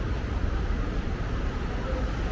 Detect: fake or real real